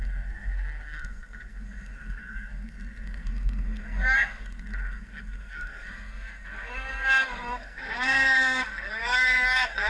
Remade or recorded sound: remade